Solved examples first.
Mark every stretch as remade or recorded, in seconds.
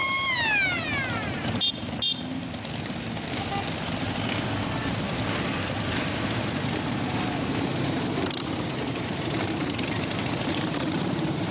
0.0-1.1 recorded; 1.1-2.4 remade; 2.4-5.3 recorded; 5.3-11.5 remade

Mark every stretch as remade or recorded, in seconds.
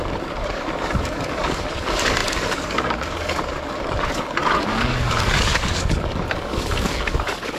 0.0-7.6 remade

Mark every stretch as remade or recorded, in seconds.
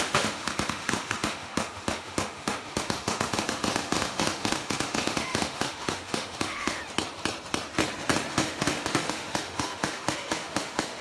0.0-6.8 remade; 6.8-8.3 recorded; 8.3-11.0 remade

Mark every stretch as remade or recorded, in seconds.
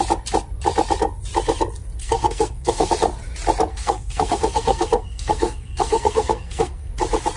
0.0-2.0 recorded; 2.0-2.9 remade; 2.9-3.7 recorded; 3.7-6.9 remade; 6.9-7.4 recorded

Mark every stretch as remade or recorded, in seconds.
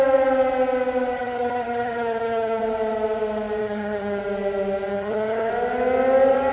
0.0-1.2 recorded; 1.2-2.6 remade; 2.6-3.6 recorded; 3.6-4.2 remade; 4.2-4.9 recorded; 4.9-5.5 remade; 5.5-6.5 recorded